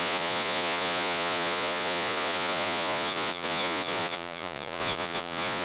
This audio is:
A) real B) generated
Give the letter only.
B